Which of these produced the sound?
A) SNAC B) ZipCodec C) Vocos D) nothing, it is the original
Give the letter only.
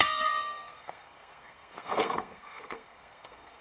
A